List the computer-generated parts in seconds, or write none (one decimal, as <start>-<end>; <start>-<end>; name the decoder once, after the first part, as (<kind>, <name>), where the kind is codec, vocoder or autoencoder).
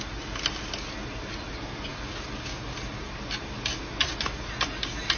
none